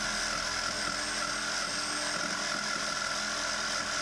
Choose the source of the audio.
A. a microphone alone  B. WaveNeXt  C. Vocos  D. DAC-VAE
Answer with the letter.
A